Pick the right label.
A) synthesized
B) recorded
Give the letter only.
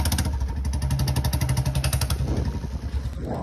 B